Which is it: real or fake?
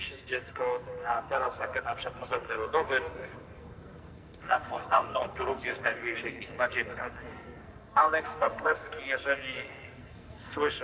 fake